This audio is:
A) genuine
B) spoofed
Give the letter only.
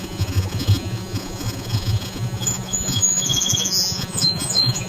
B